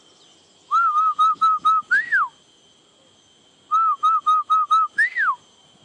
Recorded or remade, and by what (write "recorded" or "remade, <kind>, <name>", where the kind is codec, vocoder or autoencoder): recorded